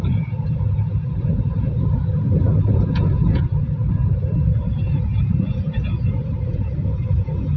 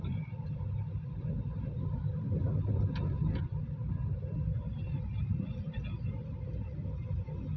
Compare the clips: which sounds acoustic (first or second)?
second